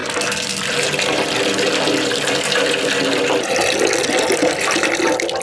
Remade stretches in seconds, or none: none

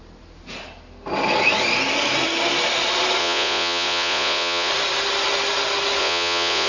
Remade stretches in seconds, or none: 3.2-4.7 (vocoder, Vocos); 6.0-6.7

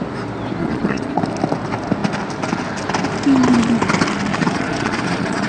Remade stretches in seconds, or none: 0.6-1.2 (vocoder, Vocos); 4.3-5.5

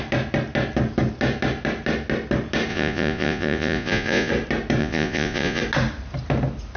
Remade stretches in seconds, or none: 2.7-4.3 (vocoder, Vocos); 4.8-5.6

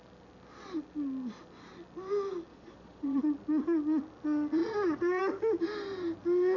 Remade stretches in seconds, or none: 2.5-3.2 (vocoder, Vocos); 4.6-5.2